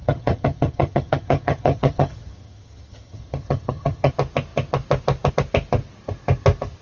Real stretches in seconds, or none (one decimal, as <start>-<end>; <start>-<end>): 4.1-6.8